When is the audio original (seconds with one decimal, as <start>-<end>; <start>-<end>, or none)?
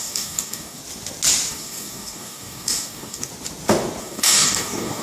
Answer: 0.8-1.5; 3.3-4.0